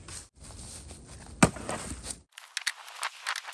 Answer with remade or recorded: recorded